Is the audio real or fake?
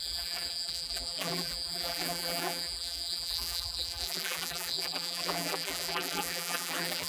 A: fake